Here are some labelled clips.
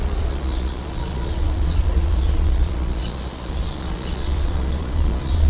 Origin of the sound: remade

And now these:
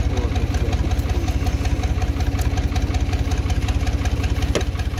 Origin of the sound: recorded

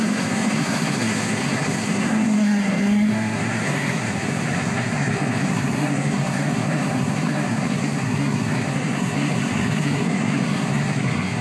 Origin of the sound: remade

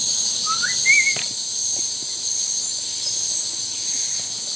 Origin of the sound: remade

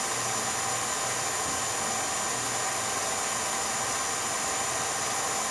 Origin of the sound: recorded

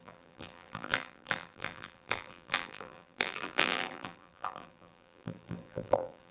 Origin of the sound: remade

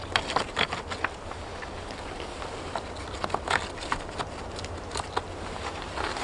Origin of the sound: recorded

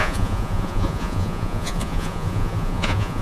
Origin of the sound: remade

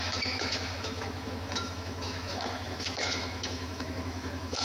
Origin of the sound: remade